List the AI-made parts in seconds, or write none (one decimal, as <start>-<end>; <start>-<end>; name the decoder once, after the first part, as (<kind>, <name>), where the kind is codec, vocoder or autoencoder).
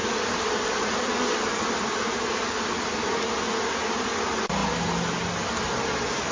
none